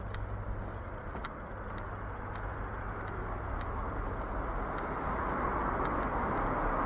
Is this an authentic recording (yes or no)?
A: yes